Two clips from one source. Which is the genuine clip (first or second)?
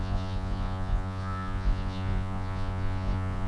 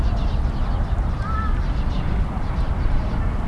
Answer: second